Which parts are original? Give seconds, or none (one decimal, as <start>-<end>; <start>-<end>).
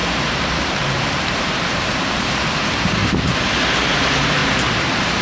3.0-3.7